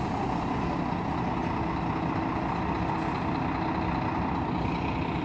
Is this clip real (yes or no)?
yes